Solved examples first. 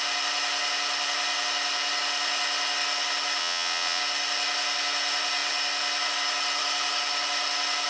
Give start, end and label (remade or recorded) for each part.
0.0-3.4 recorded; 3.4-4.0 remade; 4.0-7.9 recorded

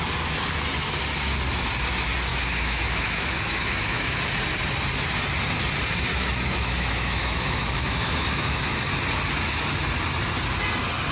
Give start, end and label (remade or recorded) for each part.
0.0-2.3 recorded; 2.3-4.2 remade; 4.2-6.1 recorded; 6.1-8.8 remade; 8.8-11.1 recorded

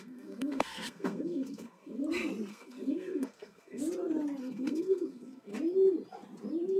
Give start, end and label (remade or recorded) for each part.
0.0-2.0 remade; 2.0-2.5 recorded; 2.5-3.8 remade; 3.8-4.4 recorded; 4.4-5.5 remade; 5.5-6.8 recorded

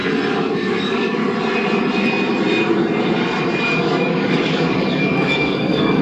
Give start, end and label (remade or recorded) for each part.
0.0-0.5 recorded; 0.5-1.2 remade; 1.2-3.8 recorded; 3.8-6.0 remade

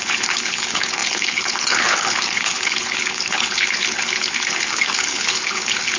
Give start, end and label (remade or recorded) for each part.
0.0-6.0 remade

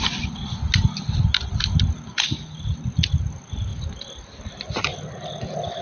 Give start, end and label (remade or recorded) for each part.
0.0-5.8 recorded

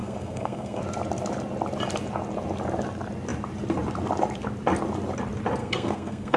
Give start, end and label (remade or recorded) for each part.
0.0-0.8 remade; 0.8-5.6 recorded; 5.6-6.4 remade